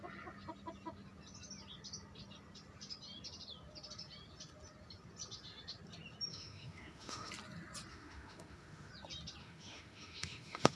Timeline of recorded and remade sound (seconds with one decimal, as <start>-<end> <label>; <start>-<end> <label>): 0.0-6.3 recorded; 6.3-7.3 remade; 7.3-7.9 recorded; 7.9-8.9 remade; 8.9-9.4 recorded; 9.4-10.8 remade